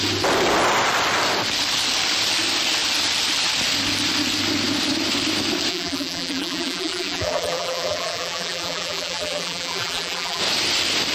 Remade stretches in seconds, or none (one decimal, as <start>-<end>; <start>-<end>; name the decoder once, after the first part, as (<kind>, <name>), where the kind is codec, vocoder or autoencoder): 5.7-10.4 (vocoder, BigVGAN v2)